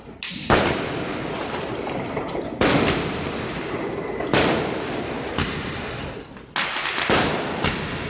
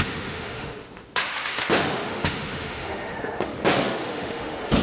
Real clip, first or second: first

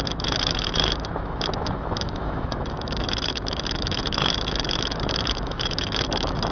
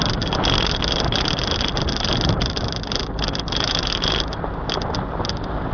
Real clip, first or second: second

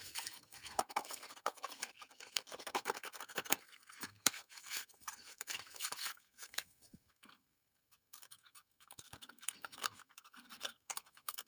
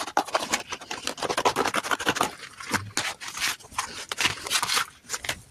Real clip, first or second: second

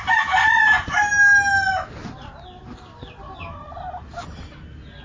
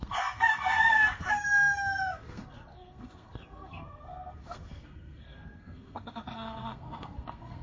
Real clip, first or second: first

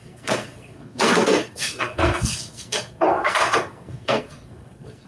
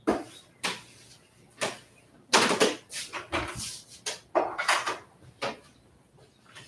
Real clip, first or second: second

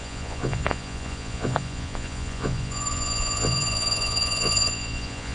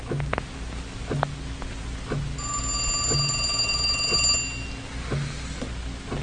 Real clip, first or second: second